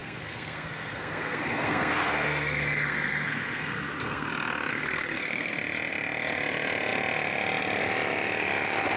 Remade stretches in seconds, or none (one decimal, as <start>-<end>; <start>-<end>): 0.0-4.3; 4.7-5.5